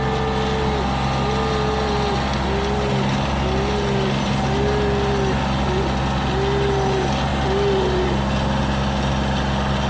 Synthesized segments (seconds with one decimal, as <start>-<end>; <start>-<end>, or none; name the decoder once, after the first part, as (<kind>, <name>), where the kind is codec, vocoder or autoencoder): none